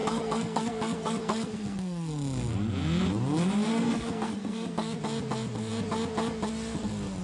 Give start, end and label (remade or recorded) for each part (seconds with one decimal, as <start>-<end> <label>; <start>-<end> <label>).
0.0-2.1 remade; 2.1-3.7 recorded; 3.7-5.0 remade; 5.0-7.2 recorded